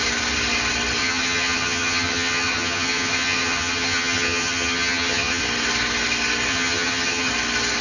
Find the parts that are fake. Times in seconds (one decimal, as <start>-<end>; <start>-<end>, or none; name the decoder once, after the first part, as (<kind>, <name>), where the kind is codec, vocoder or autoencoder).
1.0-5.4 (vocoder, HiFi-GAN); 6.5-7.3